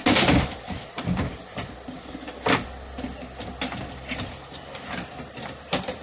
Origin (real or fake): real